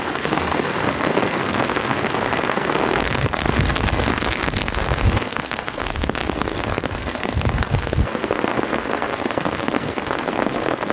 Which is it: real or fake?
fake